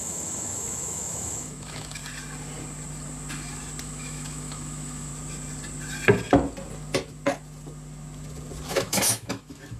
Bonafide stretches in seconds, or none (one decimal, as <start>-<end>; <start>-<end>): 2.0-3.8; 5.1-8.7